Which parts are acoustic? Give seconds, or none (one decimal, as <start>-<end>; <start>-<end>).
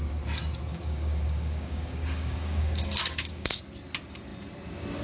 0.0-0.7; 3.6-5.0